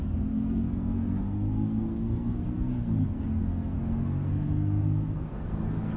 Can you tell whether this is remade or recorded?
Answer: remade